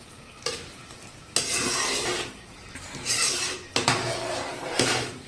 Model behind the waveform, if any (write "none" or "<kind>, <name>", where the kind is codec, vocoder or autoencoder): vocoder, BigVGAN v2